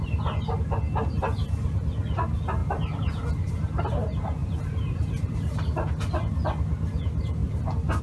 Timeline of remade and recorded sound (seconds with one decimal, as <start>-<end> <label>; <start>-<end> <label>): 0.0-2.6 recorded; 2.6-3.8 remade; 3.8-4.4 recorded; 4.4-5.6 remade; 5.6-7.4 recorded; 7.4-8.0 remade